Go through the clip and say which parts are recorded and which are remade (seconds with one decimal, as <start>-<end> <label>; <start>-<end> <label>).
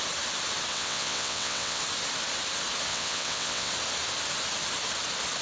0.0-0.7 recorded; 0.7-1.8 remade; 1.8-2.9 recorded; 2.9-3.7 remade; 3.7-5.4 recorded